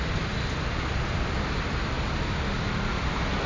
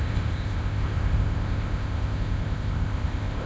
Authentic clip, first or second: first